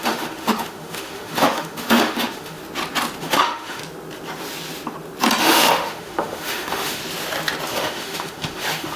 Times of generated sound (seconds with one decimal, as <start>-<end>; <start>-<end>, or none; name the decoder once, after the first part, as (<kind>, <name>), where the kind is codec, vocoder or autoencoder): 0.0-2.6 (autoencoder, DAC-VAE); 3.2-3.8; 5.4-7.0; 7.7-9.0